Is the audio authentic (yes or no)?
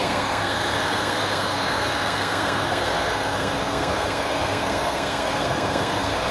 no